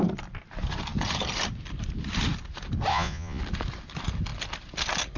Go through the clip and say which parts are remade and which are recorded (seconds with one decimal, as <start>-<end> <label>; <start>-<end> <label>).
0.0-2.9 recorded; 2.9-3.4 remade; 3.4-5.2 recorded